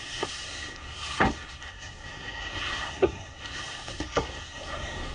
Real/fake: fake